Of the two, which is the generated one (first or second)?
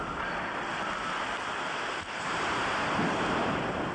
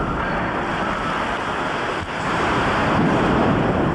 first